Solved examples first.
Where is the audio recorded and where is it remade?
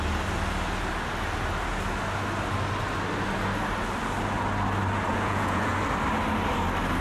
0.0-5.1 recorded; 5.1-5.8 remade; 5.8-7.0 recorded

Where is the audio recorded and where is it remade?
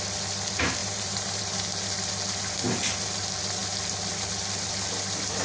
0.0-0.8 recorded; 0.8-1.4 remade; 1.4-5.4 recorded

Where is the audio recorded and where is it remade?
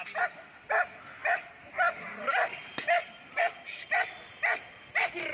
0.0-5.3 recorded